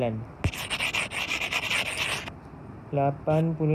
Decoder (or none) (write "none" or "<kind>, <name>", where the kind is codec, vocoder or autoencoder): none